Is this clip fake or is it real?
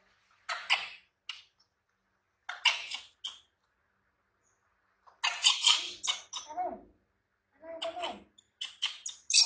real